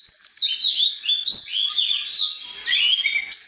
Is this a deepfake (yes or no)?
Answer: no